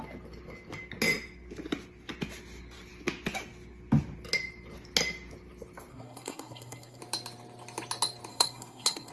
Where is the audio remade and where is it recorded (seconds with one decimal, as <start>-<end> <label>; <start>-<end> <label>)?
0.0-5.9 recorded; 5.9-7.0 remade; 7.0-8.3 recorded; 8.3-9.1 remade